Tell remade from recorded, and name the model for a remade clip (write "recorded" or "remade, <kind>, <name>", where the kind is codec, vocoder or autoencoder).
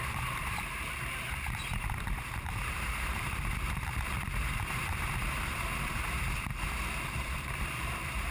remade, vocoder, BigVGAN v2